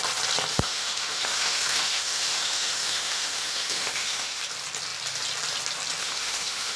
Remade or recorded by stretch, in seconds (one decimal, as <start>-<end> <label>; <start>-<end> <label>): 0.0-0.5 recorded; 0.5-4.4 remade; 4.4-6.0 recorded; 6.0-6.8 remade